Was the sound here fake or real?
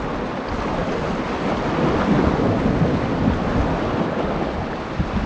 real